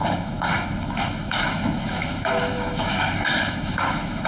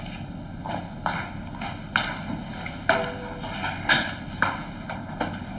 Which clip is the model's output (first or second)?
first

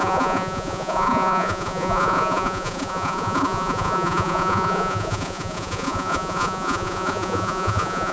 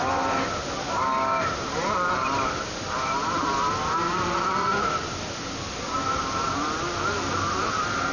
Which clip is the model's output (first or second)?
first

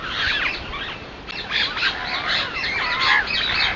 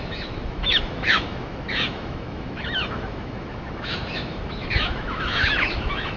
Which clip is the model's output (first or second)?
second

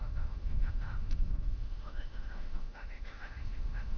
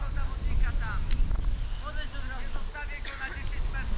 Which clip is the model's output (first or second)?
first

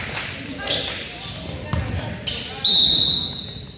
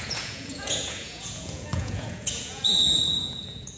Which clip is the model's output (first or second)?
second